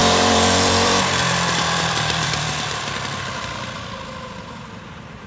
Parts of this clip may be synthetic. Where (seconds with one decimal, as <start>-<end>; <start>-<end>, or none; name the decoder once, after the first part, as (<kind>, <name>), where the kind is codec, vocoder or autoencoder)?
0.0-3.2 (vocoder, BigVGAN v2)